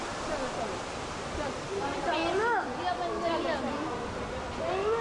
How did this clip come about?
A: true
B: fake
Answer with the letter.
A